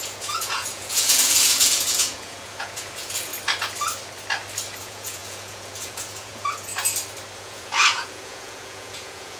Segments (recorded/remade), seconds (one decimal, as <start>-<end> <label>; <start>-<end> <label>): 0.0-3.3 remade; 3.3-4.8 recorded; 4.8-6.7 remade; 6.7-7.4 recorded; 7.4-9.4 remade